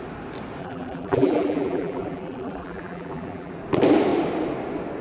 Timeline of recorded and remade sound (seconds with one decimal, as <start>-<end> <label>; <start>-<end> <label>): 0.0-0.6 recorded; 0.6-3.5 remade; 3.5-5.0 recorded